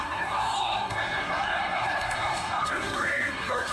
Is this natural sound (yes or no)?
no